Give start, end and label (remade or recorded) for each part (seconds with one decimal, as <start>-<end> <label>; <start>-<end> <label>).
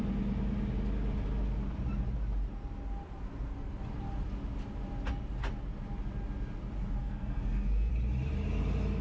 0.0-7.0 recorded; 7.0-7.9 remade; 7.9-9.0 recorded